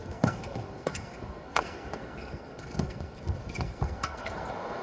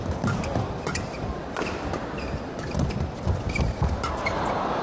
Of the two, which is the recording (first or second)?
second